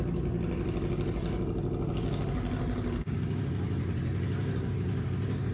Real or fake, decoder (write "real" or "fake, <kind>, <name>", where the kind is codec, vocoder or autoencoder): real